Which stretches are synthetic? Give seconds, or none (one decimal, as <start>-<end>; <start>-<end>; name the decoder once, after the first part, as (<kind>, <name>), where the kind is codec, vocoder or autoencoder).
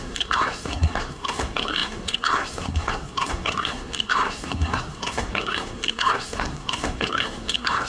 0.0-7.9 (codec, SNAC)